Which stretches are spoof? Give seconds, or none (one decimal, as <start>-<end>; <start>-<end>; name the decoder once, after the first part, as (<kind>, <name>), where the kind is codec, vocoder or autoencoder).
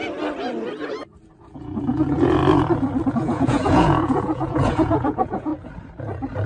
1.4-2.4 (vocoder, Vocos); 3.1-5.5